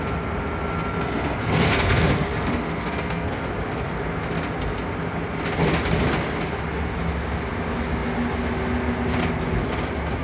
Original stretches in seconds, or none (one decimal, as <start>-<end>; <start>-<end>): 0.0-1.0; 3.4-10.2